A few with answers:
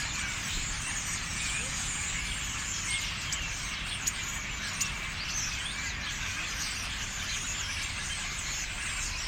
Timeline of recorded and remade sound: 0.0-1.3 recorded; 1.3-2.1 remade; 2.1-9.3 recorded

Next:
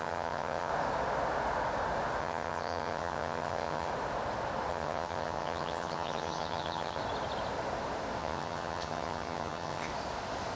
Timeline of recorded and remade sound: 0.0-0.7 remade; 0.7-2.2 recorded; 2.2-3.9 remade; 3.9-4.7 recorded; 4.7-7.0 remade; 7.0-8.2 recorded; 8.2-9.9 remade; 9.9-10.6 recorded

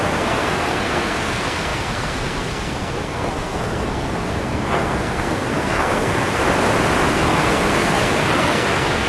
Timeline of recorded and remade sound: 0.0-6.4 remade; 6.4-7.1 recorded; 7.1-9.1 remade

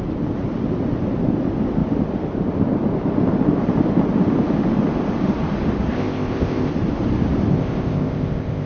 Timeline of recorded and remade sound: 0.0-5.9 recorded; 5.9-6.7 remade; 6.7-7.5 recorded; 7.5-8.7 remade

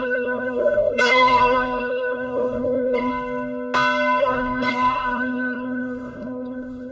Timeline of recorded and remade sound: 0.0-3.1 remade; 3.1-4.2 recorded; 4.2-6.9 remade

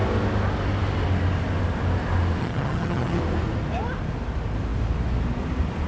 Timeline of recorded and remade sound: 0.0-2.4 recorded; 2.4-3.2 remade; 3.2-5.9 recorded

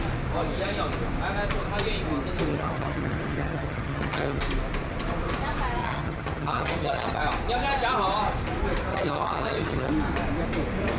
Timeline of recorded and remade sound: 0.0-2.5 recorded; 2.5-4.4 remade; 4.4-5.8 recorded; 5.8-7.2 remade; 7.2-8.9 recorded; 8.9-9.9 remade; 9.9-11.0 recorded

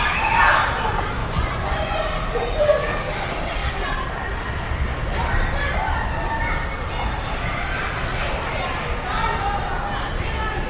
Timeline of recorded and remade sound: 0.0-1.2 recorded; 1.2-2.0 remade; 2.0-10.7 recorded